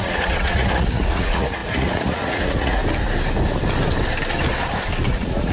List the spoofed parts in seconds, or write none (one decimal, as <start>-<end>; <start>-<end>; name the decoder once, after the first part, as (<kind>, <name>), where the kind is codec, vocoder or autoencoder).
0.0-2.8 (vocoder, Vocos); 5.1-5.5